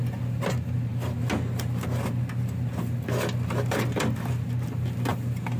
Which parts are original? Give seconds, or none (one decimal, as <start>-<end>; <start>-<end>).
0.0-5.6